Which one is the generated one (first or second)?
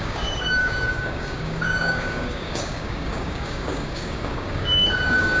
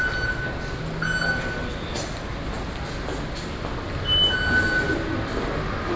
first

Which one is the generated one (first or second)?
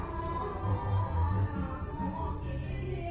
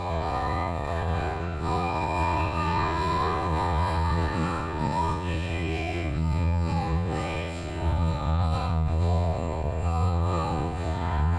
second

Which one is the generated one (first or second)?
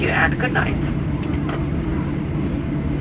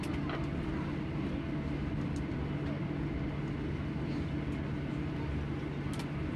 first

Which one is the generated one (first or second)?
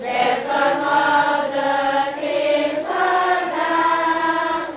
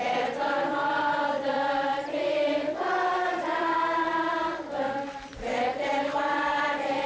second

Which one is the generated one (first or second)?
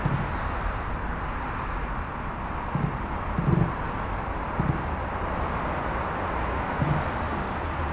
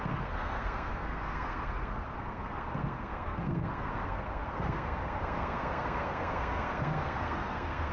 second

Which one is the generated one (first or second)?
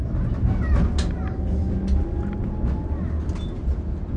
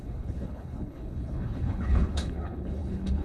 second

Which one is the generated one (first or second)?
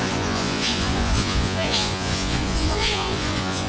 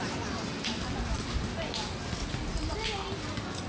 first